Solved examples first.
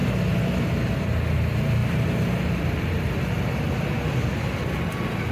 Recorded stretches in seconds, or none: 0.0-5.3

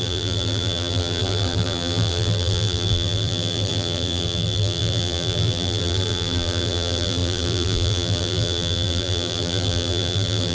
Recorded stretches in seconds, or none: none